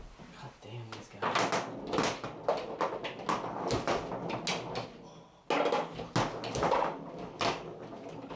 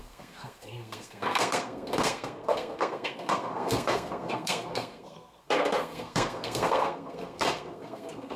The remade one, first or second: second